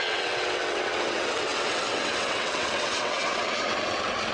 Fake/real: fake